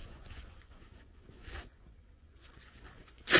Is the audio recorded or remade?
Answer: remade